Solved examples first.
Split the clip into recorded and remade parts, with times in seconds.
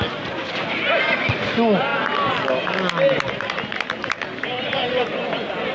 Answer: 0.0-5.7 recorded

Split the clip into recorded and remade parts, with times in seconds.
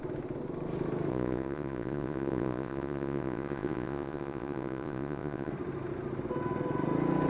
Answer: 0.0-1.1 recorded; 1.1-5.5 remade; 5.5-7.3 recorded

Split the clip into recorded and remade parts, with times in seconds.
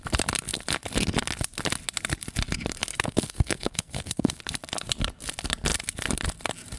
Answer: 0.0-2.9 recorded; 2.9-4.4 remade; 4.4-6.8 recorded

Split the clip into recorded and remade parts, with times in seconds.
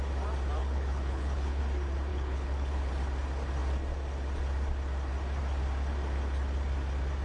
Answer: 0.0-0.6 recorded; 0.6-1.6 remade; 1.6-2.1 recorded; 2.1-2.9 remade; 2.9-7.2 recorded